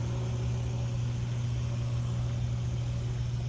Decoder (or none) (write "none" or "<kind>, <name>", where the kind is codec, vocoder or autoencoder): none